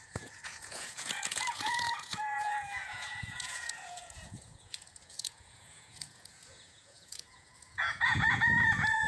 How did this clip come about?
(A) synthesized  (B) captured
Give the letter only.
A